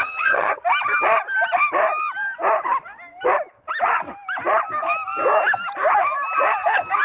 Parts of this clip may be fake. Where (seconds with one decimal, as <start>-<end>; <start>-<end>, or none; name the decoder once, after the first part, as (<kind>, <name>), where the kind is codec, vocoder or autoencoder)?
0.0-0.6 (vocoder, HiFi-GAN)

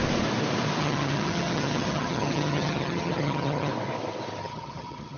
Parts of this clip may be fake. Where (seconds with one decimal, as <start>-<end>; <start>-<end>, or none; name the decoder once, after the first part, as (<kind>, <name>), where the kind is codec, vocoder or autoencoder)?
0.8-3.7 (vocoder, HiFi-GAN); 4.4-5.2